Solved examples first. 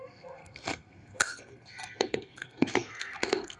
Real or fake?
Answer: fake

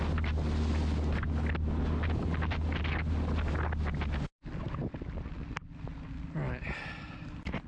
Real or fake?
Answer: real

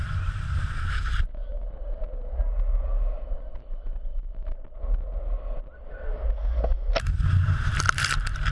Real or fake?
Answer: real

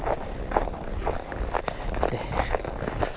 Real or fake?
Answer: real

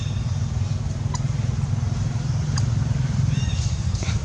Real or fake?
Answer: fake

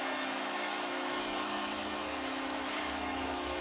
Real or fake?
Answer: fake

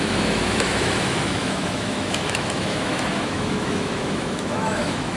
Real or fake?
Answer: fake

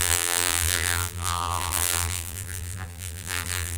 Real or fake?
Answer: fake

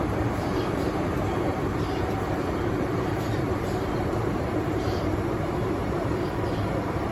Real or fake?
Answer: fake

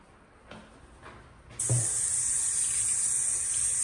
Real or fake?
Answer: real